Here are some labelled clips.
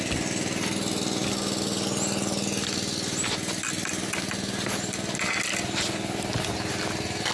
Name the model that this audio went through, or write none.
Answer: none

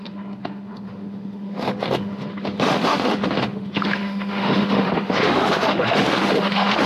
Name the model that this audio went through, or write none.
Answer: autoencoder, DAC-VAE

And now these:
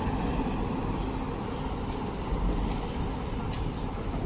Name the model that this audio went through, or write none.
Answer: none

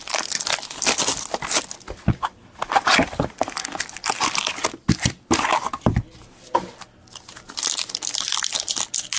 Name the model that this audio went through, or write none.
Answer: none